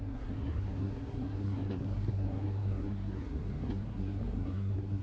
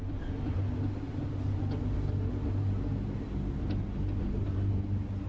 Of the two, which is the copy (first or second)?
first